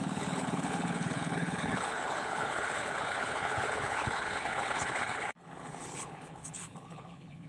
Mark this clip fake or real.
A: fake